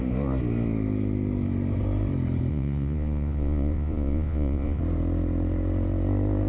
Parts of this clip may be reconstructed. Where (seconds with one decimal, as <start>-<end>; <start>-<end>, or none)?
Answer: 2.5-4.8